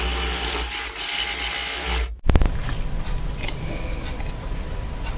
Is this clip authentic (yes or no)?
yes